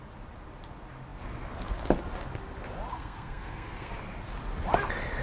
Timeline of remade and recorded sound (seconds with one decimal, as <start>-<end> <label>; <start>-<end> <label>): 0.0-2.9 recorded; 2.9-3.9 remade; 3.9-5.2 recorded